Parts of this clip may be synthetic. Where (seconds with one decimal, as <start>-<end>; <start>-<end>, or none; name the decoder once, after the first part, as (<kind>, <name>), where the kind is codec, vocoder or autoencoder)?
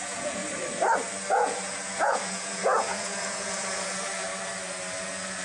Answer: 0.0-0.4 (vocoder, Vocos); 1.3-4.3; 5.0-5.4